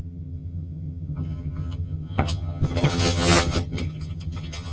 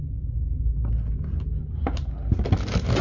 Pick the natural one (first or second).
second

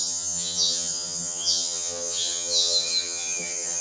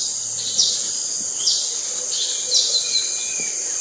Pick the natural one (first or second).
second